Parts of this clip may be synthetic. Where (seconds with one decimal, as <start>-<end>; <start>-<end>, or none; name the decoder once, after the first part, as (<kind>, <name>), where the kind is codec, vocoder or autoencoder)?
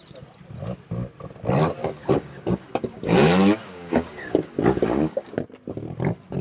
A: 1.8-5.4 (codec, DAC)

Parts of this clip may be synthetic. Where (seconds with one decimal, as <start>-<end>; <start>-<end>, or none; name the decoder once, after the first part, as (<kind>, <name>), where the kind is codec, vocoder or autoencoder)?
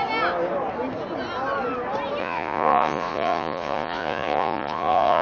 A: 2.2-5.2 (vocoder, Vocos)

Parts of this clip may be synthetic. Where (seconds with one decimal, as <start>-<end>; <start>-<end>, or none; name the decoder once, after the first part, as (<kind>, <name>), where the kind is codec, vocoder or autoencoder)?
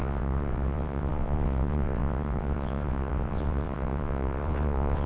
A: 0.0-5.1 (vocoder, WaveNeXt)